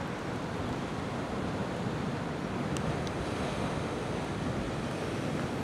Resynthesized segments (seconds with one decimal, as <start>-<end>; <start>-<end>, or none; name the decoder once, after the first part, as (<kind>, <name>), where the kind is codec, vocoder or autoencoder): none